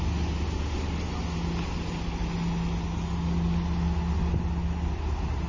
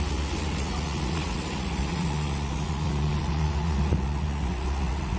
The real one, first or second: first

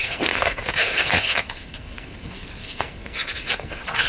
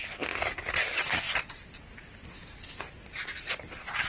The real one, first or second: second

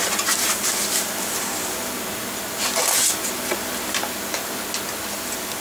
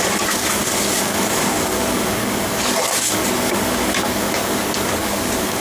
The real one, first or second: first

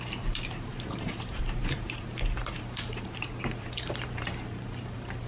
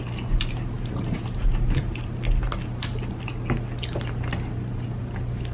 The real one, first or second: second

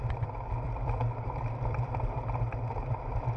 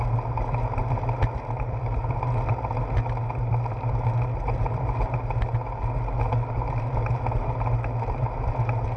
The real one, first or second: second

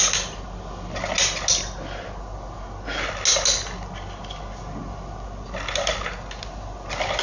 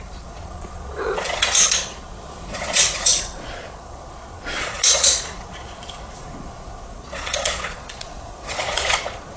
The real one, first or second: first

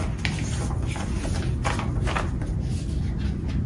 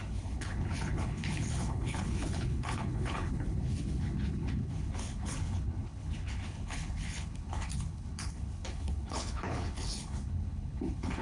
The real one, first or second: first